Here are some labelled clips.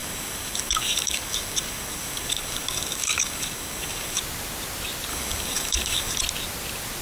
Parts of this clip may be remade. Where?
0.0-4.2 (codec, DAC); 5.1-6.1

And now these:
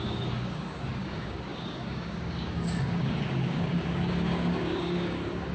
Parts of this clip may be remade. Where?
0.0-5.5 (codec, DAC)

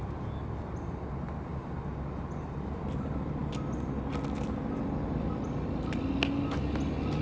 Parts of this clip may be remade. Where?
none

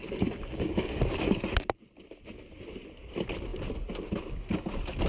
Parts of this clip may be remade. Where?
0.0-1.4 (codec, DAC)

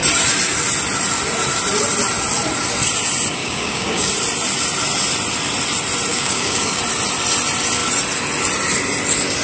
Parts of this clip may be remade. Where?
3.4-4.1 (codec, DAC); 6.1-6.8

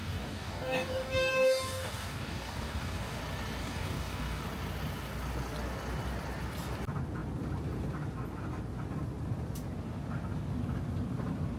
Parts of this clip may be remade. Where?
0.0-3.2 (codec, DAC); 3.6-4.4